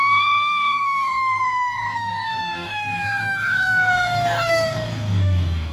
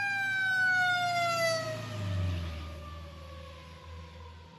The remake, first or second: first